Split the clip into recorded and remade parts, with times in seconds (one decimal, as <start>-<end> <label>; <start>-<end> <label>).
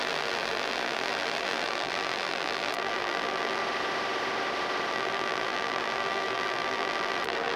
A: 0.0-3.6 remade; 3.6-4.9 recorded; 4.9-7.6 remade